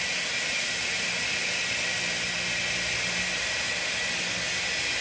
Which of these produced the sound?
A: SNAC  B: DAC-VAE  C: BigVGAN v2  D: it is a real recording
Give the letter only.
D